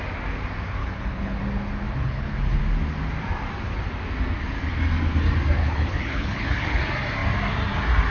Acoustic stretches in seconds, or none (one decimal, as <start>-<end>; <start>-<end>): 0.0-0.8; 1.4-2.0; 2.6-5.6; 6.8-8.1